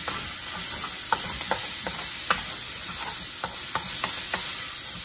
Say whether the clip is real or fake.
real